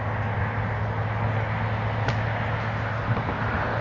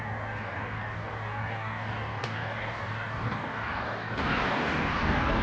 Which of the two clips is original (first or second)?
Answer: first